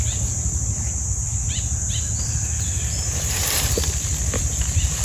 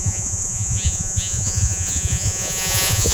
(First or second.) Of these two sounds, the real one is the first